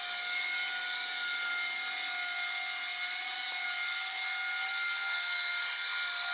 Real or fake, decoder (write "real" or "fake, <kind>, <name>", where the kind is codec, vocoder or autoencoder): real